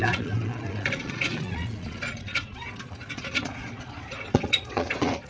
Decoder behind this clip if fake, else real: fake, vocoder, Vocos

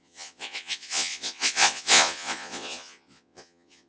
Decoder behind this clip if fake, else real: fake, vocoder, Vocos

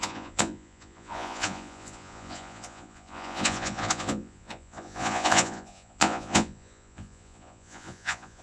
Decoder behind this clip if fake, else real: fake, vocoder, Vocos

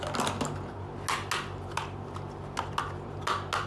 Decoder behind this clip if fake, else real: real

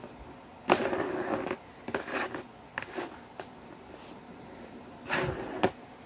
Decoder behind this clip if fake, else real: real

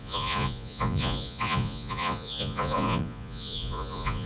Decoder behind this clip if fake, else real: fake, vocoder, Vocos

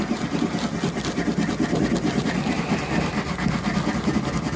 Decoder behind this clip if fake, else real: real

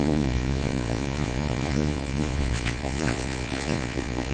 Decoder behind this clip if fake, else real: fake, vocoder, Vocos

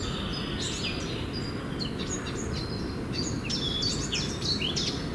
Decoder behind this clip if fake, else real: real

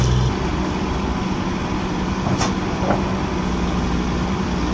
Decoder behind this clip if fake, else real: real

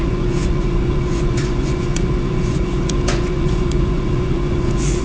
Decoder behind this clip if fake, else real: fake, vocoder, Vocos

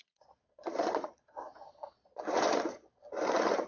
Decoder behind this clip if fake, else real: fake, vocoder, Vocos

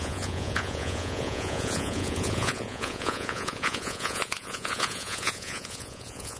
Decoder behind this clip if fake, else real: fake, vocoder, Vocos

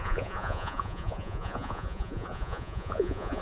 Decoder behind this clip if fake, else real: fake, vocoder, Vocos